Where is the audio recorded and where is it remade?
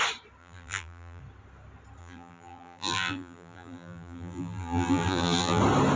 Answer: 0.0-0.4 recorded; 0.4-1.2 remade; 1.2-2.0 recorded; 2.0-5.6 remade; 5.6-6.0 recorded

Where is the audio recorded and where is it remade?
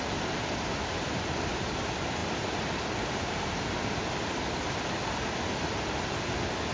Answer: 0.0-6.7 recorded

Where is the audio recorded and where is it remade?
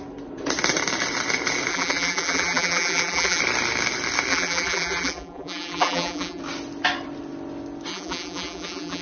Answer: 0.0-1.7 recorded; 1.7-3.4 remade; 3.4-4.3 recorded; 4.3-6.4 remade; 6.4-7.9 recorded; 7.9-9.0 remade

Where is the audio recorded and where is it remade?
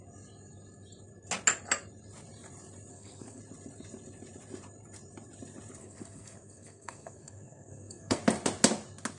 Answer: 0.0-2.9 recorded; 2.9-3.4 remade; 3.4-5.8 recorded; 5.8-8.2 remade; 8.2-9.2 recorded